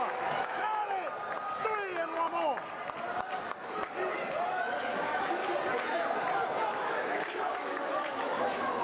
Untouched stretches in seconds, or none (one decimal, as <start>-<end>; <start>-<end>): 0.8-4.5; 5.4-6.7